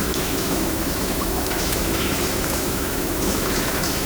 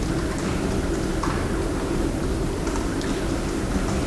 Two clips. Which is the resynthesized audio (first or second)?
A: first